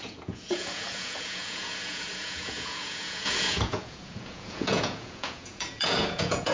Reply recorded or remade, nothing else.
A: remade